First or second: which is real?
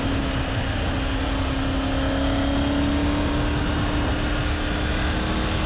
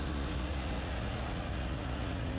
first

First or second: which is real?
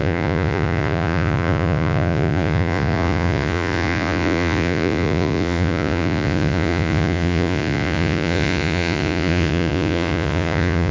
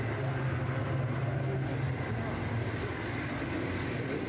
second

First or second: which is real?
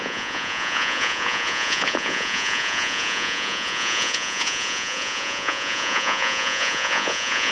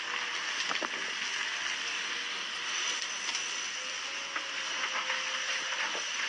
second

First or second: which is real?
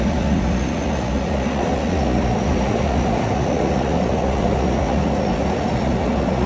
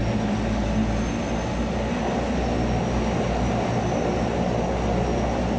second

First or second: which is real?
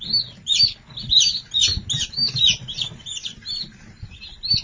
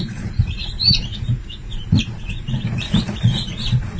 first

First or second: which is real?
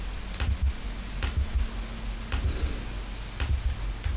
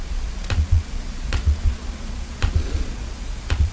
first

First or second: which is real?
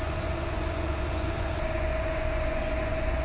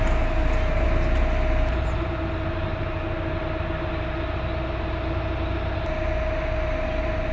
second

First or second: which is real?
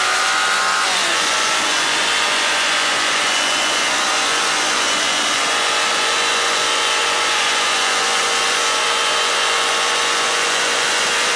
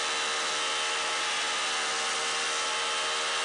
second